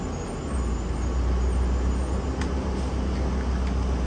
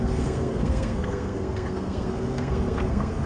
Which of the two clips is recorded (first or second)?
first